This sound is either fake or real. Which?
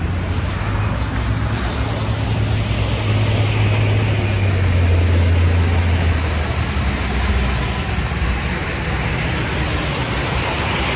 real